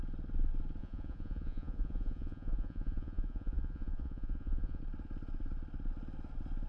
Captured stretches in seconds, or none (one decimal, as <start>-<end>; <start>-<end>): 0.0-0.8; 4.8-6.7